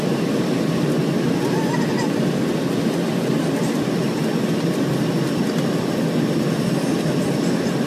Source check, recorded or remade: recorded